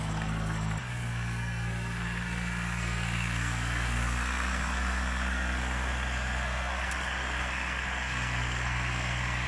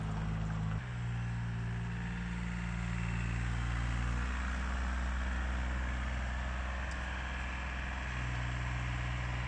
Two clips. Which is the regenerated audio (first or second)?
first